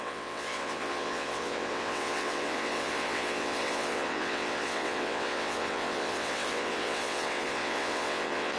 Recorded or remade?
remade